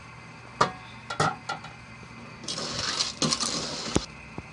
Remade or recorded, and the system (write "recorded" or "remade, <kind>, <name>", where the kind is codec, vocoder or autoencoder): recorded